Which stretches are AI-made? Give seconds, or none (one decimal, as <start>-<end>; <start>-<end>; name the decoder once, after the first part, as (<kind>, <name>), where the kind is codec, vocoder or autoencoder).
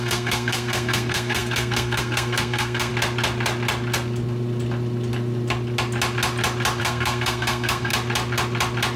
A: 0.0-2.9 (codec, SNAC); 6.8-7.9